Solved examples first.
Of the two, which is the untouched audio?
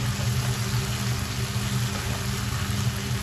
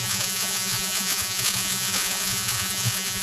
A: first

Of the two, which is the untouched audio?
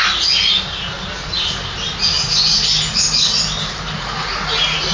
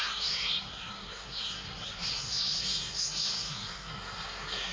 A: first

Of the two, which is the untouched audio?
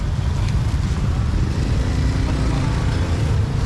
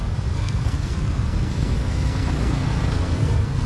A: first